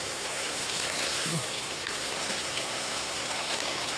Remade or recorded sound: remade